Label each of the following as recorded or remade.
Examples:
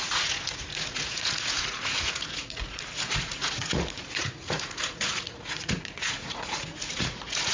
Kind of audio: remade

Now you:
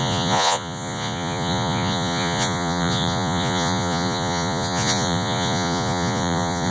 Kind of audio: remade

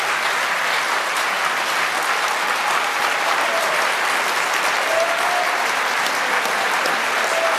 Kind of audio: recorded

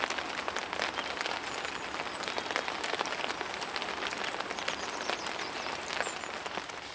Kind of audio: recorded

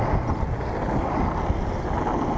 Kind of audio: recorded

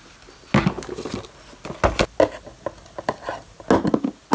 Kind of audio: recorded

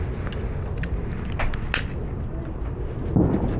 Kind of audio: recorded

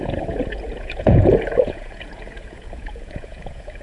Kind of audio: remade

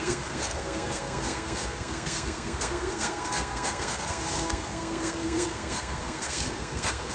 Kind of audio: remade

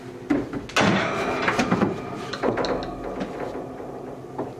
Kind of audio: recorded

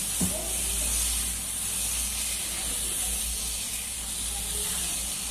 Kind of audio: recorded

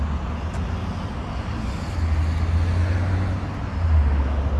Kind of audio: recorded